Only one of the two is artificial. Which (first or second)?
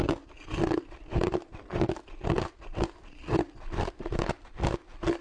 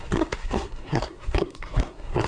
second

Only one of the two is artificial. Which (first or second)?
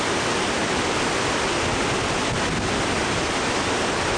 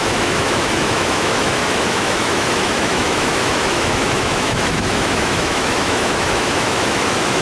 second